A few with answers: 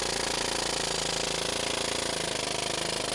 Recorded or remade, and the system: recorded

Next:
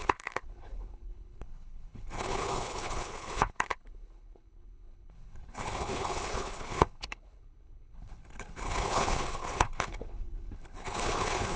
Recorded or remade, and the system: remade, codec, HILCodec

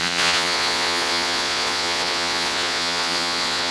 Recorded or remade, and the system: remade, vocoder, Vocos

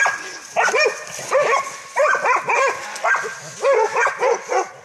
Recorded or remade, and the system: recorded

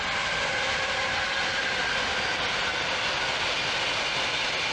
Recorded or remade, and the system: recorded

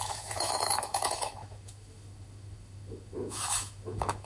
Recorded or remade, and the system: remade, autoencoder, DAC-VAE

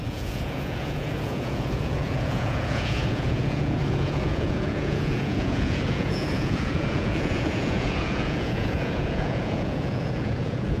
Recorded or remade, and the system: remade, vocoder, Vocos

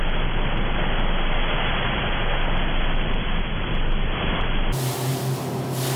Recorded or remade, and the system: recorded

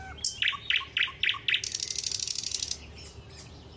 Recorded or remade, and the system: recorded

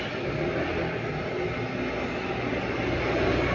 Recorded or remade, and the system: recorded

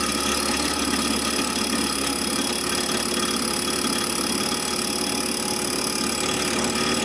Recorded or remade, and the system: recorded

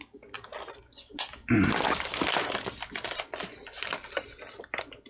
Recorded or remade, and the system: recorded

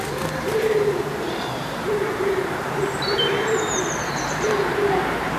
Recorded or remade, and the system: remade, vocoder, BigVGAN v2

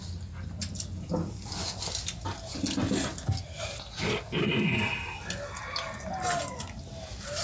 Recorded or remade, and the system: recorded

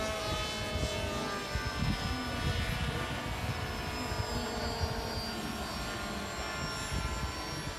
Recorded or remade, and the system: recorded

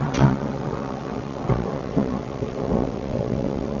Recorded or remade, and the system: remade, vocoder, WaveNeXt